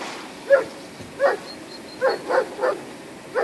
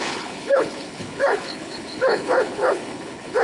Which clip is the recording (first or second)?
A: first